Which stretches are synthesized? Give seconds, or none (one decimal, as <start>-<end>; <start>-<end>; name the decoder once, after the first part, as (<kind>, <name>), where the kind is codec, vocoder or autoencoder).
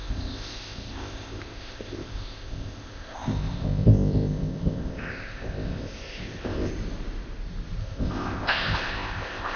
0.0-6.7 (codec, ZipCodec); 7.8-9.6